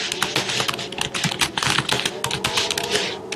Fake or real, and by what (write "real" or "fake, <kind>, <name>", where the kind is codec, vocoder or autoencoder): real